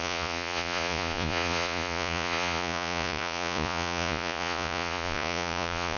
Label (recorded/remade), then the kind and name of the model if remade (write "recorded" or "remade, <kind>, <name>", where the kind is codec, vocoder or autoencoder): remade, vocoder, Vocos